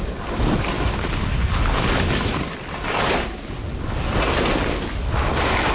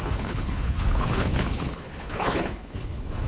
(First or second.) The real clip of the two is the first